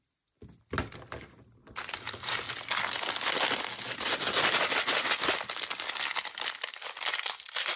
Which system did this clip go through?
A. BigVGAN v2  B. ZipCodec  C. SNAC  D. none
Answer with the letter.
D